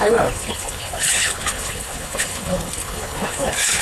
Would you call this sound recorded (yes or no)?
no